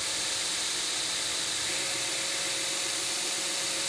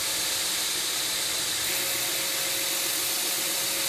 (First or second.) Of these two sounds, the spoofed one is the first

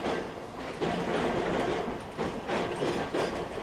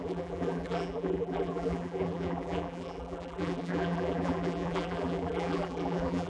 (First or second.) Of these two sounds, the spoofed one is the second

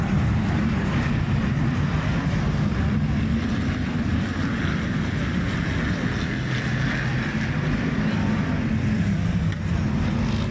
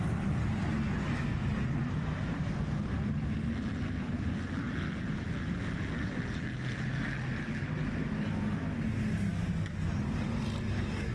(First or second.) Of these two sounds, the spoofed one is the first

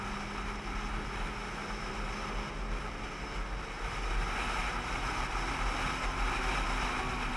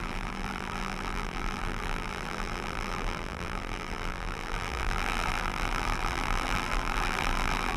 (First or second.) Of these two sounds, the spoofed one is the second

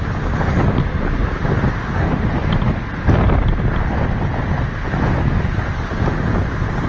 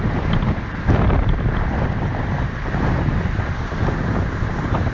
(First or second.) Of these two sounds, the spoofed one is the second